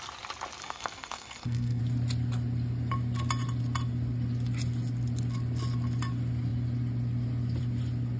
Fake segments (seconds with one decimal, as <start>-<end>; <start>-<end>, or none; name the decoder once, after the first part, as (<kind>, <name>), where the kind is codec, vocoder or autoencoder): 0.6-1.8 (codec, SNAC)